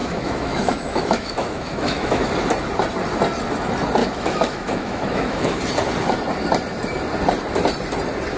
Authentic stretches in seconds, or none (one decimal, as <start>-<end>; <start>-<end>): 2.3-4.0; 5.6-8.4